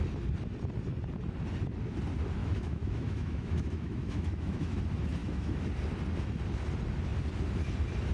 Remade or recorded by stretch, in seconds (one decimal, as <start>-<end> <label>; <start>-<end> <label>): 0.0-2.4 recorded; 2.4-4.8 remade; 4.8-5.2 recorded; 5.2-5.7 remade; 5.7-8.1 recorded

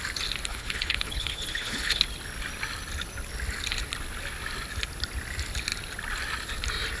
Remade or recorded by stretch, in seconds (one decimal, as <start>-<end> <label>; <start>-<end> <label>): 0.0-0.5 recorded; 0.5-2.0 remade; 2.0-7.0 recorded

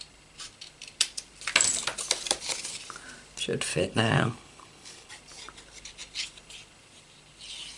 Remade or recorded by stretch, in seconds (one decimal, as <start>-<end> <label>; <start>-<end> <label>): 0.0-3.7 recorded; 3.7-5.1 remade; 5.1-7.8 recorded